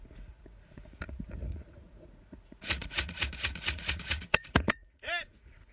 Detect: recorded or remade remade